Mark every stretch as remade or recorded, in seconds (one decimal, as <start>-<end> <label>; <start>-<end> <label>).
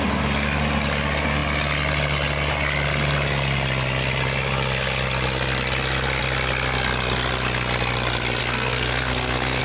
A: 0.0-8.4 recorded; 8.4-9.6 remade